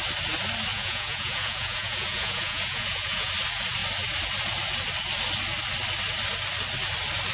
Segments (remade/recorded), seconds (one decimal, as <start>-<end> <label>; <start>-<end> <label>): 0.0-0.7 recorded; 0.7-3.3 remade; 3.3-7.3 recorded